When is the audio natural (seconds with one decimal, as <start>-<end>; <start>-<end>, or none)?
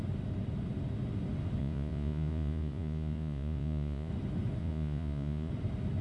0.0-1.6; 4.1-4.6; 5.5-6.0